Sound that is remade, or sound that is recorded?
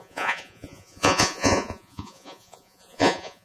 remade